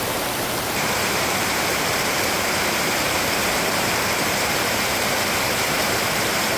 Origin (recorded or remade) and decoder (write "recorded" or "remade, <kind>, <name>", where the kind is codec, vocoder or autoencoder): remade, vocoder, BigVGAN v2